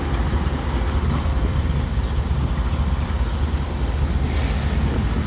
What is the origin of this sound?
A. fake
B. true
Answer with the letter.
B